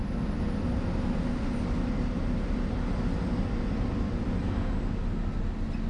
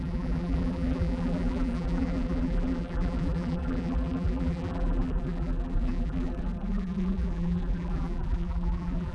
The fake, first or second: second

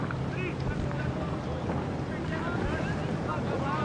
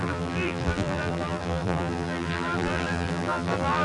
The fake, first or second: second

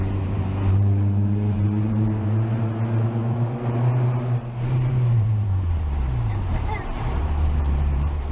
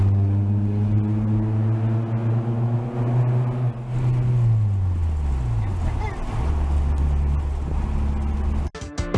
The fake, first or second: first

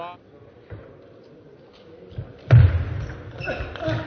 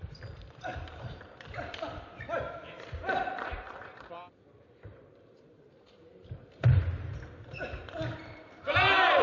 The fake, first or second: second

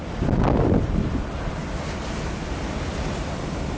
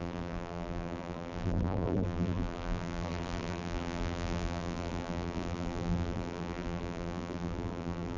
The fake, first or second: second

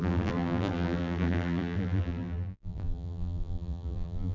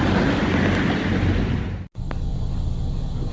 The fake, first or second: first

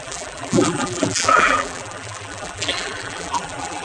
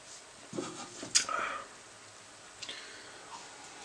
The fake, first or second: first